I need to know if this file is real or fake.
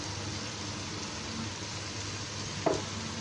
real